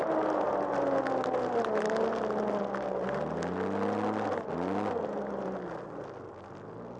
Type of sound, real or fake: real